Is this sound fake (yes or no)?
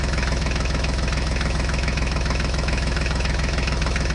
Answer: yes